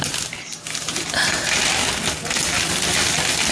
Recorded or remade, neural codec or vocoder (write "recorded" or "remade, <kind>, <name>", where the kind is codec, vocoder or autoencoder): recorded